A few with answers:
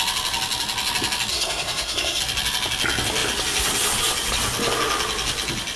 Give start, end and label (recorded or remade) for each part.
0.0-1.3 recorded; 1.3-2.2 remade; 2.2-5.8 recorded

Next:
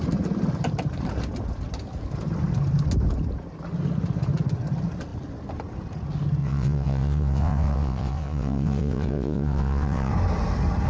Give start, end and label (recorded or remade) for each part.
0.0-6.4 recorded; 6.4-10.1 remade; 10.1-10.9 recorded

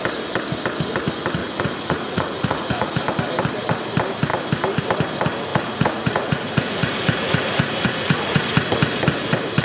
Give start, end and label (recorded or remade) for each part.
0.0-1.4 recorded; 1.4-3.0 remade; 3.0-5.5 recorded; 5.5-8.4 remade; 8.4-9.6 recorded